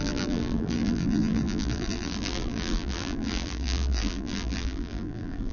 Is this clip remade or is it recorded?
remade